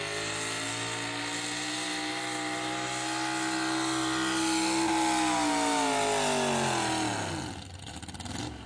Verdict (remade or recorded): recorded